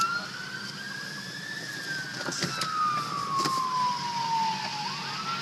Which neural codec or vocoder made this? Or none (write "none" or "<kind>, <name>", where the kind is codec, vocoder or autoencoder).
none